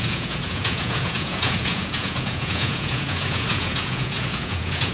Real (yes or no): no